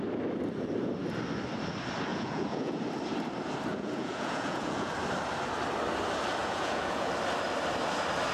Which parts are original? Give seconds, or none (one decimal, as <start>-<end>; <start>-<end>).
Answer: 0.0-2.1; 2.8-3.7; 4.9-6.4; 7.1-8.3